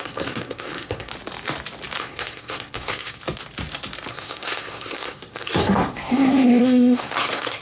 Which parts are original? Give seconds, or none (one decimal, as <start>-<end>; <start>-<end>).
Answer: 1.1-2.0; 3.2-4.1